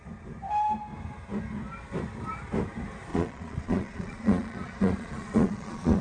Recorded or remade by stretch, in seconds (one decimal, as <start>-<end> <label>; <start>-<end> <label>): 0.0-3.1 recorded; 3.1-6.0 remade